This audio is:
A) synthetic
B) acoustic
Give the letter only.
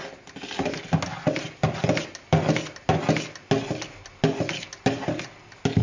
B